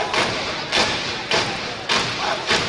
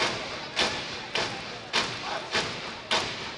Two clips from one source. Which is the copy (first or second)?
first